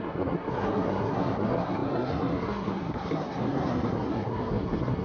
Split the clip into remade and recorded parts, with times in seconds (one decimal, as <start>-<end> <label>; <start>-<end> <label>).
0.0-5.0 remade